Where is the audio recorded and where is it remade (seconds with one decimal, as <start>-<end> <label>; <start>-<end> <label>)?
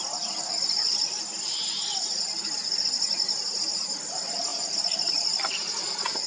0.0-6.3 recorded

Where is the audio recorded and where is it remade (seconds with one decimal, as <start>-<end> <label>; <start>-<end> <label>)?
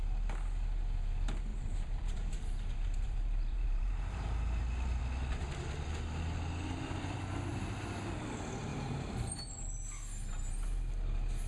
0.0-1.5 recorded; 1.5-5.0 remade; 5.0-7.5 recorded; 7.5-8.2 remade; 8.2-8.7 recorded; 8.7-9.3 remade; 9.3-11.5 recorded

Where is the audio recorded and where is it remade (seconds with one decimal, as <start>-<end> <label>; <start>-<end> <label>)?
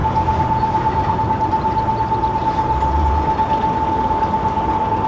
0.0-1.2 remade; 1.2-2.4 recorded; 2.4-3.2 remade; 3.2-5.1 recorded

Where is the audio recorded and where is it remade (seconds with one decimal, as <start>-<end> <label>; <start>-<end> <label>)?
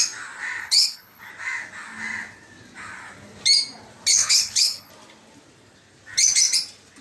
0.0-0.6 recorded; 0.6-1.3 remade; 1.3-4.1 recorded; 4.1-4.9 remade; 4.9-7.0 recorded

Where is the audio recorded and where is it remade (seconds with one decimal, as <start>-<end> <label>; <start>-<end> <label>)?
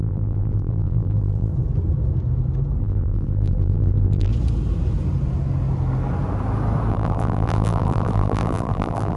0.0-1.5 remade; 1.5-2.8 recorded; 2.8-4.3 remade; 4.3-6.9 recorded; 6.9-9.2 remade